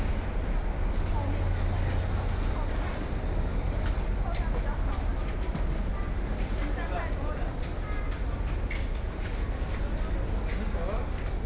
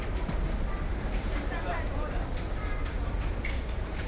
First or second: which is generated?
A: second